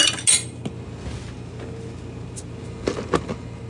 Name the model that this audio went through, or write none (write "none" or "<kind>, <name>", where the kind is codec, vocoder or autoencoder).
none